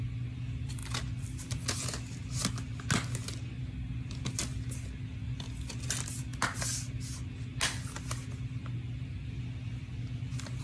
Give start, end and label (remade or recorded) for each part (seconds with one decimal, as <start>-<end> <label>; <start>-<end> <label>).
0.0-10.6 recorded